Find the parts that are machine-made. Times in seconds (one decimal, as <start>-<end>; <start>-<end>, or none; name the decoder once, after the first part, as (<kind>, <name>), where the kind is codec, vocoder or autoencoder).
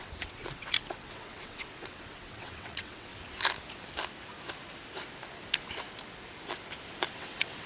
0.0-3.1 (vocoder, WaveNeXt); 7.1-7.7